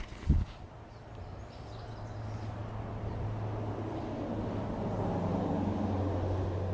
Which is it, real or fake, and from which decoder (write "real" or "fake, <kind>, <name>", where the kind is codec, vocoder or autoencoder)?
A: real